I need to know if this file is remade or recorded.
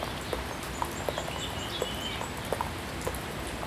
recorded